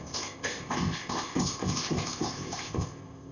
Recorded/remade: remade